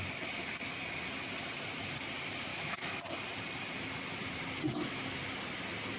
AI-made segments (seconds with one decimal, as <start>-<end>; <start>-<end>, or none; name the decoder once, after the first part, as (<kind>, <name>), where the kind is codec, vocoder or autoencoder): 2.5-3.0 (autoencoder, DAC-VAE)